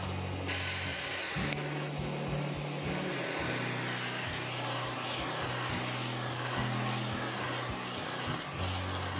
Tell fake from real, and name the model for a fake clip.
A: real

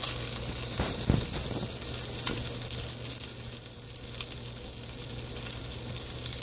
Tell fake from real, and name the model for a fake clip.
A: real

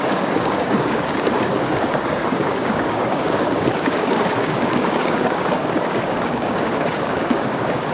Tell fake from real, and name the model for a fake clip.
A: fake, codec, DAC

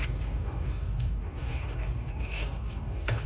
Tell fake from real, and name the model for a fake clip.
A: fake, codec, DAC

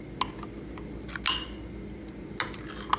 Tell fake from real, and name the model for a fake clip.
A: real